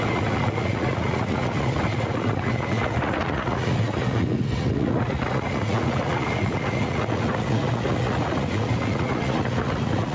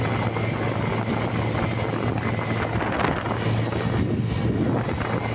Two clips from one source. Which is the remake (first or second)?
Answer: first